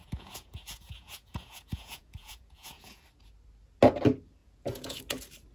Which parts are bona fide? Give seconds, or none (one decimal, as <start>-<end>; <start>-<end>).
3.0-4.4; 5.0-5.5